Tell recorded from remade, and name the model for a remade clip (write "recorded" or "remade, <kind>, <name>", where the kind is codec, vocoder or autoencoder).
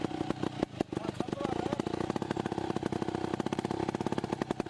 recorded